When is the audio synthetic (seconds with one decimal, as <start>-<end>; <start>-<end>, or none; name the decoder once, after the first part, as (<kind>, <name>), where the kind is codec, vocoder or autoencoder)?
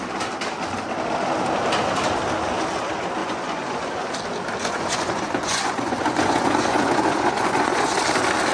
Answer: 3.2-4.1 (vocoder, Vocos); 4.6-8.0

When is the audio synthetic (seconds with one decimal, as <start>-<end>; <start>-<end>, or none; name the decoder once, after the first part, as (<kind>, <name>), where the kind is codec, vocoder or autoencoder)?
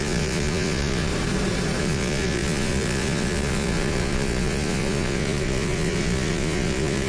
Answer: 0.0-1.1 (vocoder, Vocos); 1.8-7.1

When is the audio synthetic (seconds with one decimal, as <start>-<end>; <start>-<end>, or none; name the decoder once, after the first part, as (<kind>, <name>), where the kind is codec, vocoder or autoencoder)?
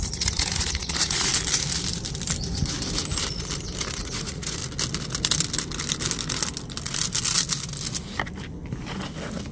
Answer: 0.0-1.3 (vocoder, Vocos); 4.0-4.6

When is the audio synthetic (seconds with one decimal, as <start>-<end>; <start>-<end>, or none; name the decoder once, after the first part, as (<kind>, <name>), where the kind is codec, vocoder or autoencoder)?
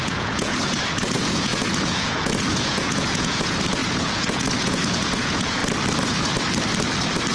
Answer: 0.0-5.6 (vocoder, Vocos)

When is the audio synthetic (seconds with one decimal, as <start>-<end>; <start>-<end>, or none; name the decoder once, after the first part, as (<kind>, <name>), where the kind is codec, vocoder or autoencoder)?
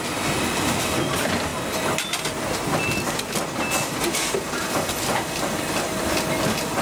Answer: none